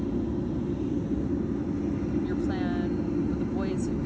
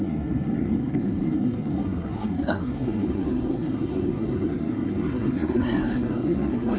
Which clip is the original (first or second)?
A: first